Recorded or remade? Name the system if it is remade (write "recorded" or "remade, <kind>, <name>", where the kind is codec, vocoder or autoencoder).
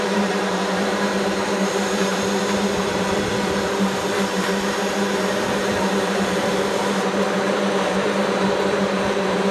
remade, vocoder, BigVGAN v2